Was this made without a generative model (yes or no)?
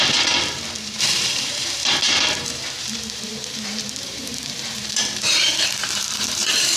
no